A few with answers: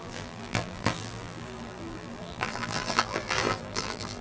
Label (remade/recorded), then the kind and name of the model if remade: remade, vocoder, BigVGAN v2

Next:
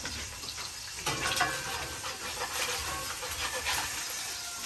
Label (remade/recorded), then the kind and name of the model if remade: recorded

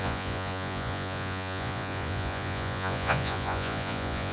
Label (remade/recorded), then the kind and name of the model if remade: remade, vocoder, Vocos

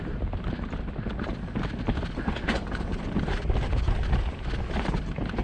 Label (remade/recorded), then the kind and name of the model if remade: recorded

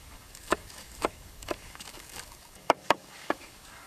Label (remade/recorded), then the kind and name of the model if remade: remade, codec, DAC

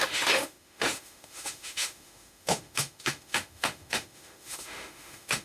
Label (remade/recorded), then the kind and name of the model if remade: remade, autoencoder, DAC-VAE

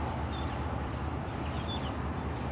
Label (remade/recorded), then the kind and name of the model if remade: remade, vocoder, BigVGAN v2